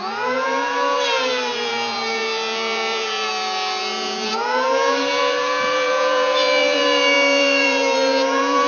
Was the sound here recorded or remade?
remade